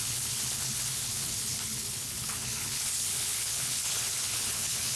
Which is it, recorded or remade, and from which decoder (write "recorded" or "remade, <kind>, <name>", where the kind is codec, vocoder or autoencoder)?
remade, codec, HILCodec